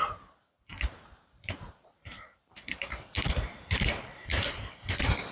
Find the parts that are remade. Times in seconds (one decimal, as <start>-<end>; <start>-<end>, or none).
0.7-3.9